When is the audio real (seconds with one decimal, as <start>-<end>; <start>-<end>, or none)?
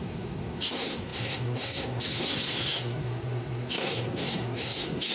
none